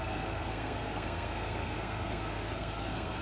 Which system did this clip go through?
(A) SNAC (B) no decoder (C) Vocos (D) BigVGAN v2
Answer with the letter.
A